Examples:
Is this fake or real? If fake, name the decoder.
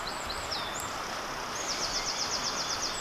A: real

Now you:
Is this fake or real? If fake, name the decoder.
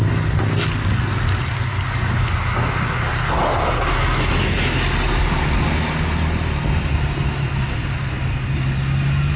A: real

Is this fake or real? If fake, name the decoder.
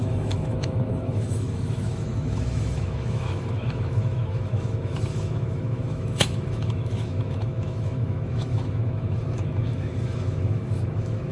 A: fake, autoencoder, DAC-VAE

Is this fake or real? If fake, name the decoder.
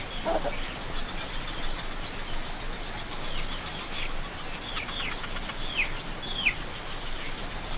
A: real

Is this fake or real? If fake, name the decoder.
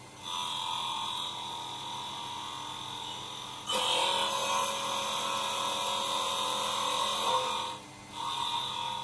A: real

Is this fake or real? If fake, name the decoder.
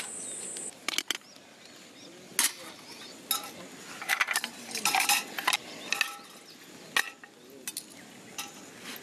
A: real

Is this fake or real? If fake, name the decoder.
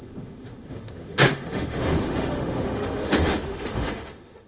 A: fake, autoencoder, DAC-VAE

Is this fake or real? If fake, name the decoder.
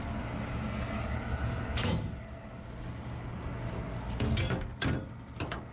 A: real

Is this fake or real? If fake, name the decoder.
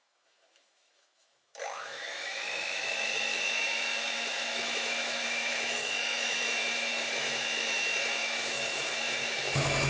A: fake, autoencoder, DAC-VAE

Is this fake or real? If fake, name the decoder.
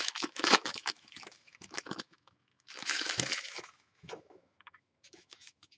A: fake, autoencoder, DAC-VAE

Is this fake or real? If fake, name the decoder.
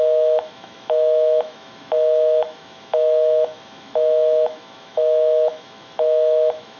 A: fake, autoencoder, DAC-VAE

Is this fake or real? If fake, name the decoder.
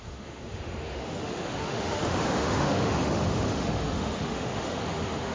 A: fake, autoencoder, DAC-VAE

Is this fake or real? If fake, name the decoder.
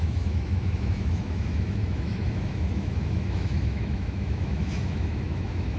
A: fake, autoencoder, DAC-VAE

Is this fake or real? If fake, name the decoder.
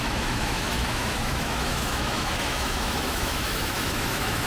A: fake, autoencoder, DAC-VAE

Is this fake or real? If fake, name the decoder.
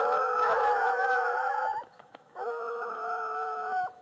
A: fake, autoencoder, DAC-VAE